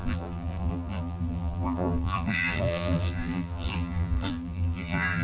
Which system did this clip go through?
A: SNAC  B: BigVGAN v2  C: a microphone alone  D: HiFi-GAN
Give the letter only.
B